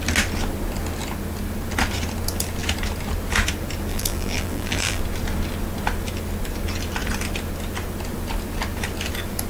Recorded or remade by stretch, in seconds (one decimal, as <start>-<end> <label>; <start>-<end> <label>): 0.0-3.9 recorded; 3.9-5.0 remade; 5.0-9.5 recorded